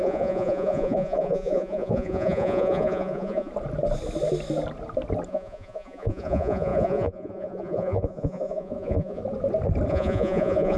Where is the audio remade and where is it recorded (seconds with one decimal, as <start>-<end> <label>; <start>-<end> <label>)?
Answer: 0.0-3.5 remade; 3.5-5.3 recorded; 5.3-9.2 remade; 9.2-9.9 recorded; 9.9-10.8 remade